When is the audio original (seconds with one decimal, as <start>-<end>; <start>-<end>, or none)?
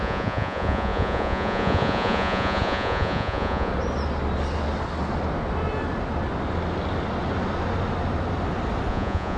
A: 3.7-8.9